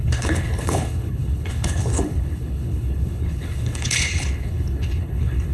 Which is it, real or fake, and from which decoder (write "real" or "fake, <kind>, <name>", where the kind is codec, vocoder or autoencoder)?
fake, codec, HILCodec